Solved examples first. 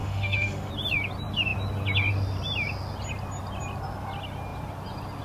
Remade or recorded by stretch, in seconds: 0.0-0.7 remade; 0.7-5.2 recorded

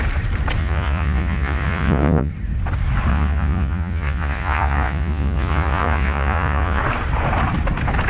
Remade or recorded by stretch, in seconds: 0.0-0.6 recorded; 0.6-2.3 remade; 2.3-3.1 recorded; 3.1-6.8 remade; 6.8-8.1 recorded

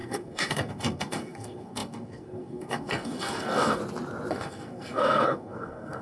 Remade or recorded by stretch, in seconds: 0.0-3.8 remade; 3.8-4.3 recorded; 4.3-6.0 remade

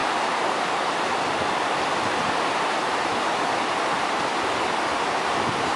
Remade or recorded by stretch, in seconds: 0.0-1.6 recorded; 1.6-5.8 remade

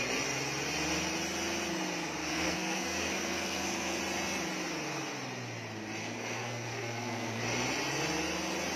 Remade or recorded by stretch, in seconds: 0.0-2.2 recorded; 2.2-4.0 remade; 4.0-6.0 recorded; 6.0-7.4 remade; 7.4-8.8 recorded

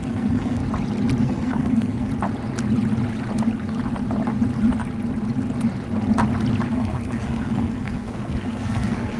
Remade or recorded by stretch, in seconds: 0.0-0.6 remade; 0.6-1.2 recorded; 1.2-2.1 remade; 2.1-6.7 recorded; 6.7-9.2 remade

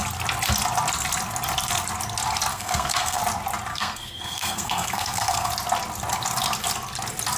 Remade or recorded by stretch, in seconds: 0.0-2.5 recorded; 2.5-3.2 remade; 3.2-3.7 recorded; 3.7-5.5 remade; 5.5-7.4 recorded

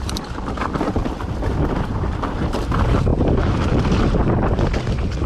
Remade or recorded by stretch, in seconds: 0.0-1.0 recorded; 1.0-2.6 remade; 2.6-3.1 recorded; 3.1-4.0 remade; 4.0-5.3 recorded